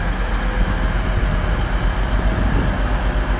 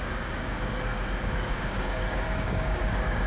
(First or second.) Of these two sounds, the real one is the first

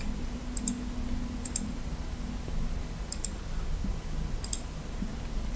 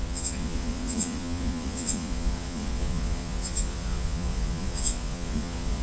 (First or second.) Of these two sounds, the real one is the first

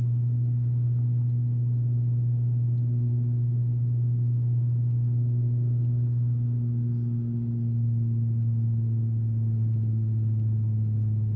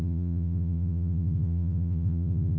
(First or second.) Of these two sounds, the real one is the first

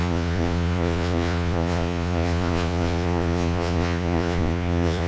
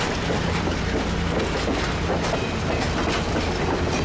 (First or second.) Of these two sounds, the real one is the second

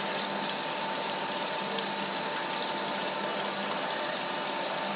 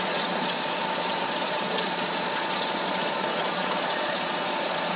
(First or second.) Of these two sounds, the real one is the first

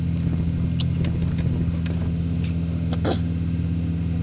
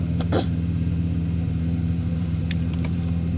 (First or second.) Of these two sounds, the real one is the first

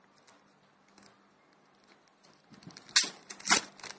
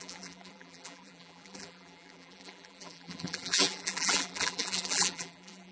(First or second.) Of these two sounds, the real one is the first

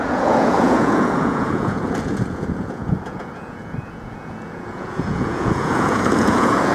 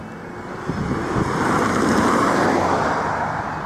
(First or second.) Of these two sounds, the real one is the second